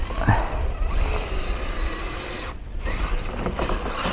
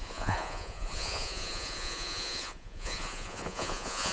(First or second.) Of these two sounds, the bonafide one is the first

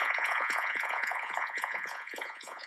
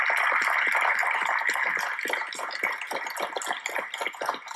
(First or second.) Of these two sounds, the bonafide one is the second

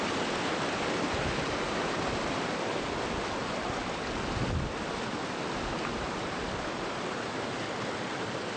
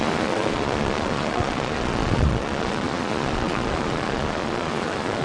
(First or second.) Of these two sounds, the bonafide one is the first